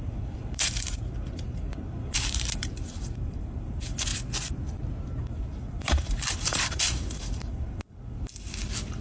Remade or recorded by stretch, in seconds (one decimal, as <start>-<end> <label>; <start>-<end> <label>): 0.0-4.1 remade; 4.1-5.2 recorded; 5.2-9.0 remade